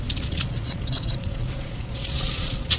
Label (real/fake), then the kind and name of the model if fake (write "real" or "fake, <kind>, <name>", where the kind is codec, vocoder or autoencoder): fake, vocoder, Vocos